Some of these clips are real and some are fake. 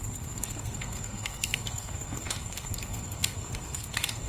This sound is fake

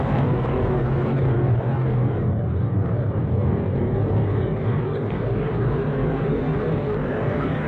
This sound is fake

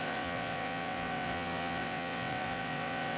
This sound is fake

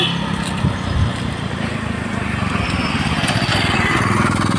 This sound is real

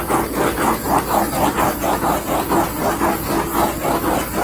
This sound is real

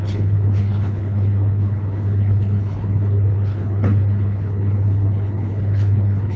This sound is fake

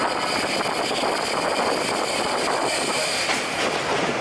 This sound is real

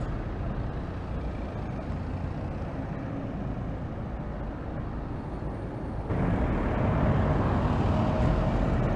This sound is real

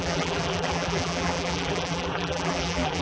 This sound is fake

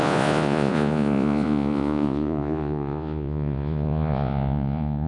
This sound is fake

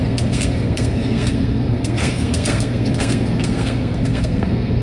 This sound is fake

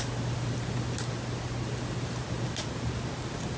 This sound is real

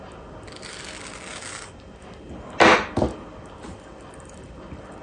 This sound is real